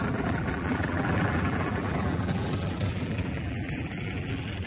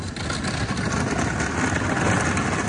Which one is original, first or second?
second